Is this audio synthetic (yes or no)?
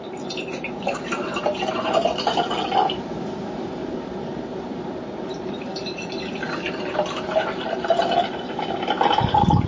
yes